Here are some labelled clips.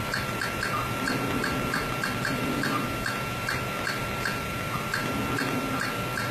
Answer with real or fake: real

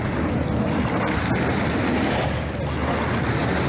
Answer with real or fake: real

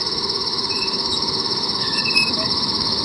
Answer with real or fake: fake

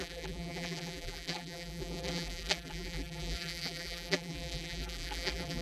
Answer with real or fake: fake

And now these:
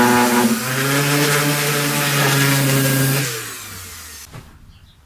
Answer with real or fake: real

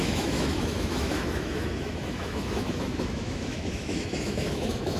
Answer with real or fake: fake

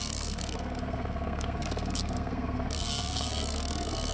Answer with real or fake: fake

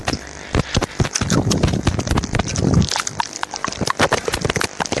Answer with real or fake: real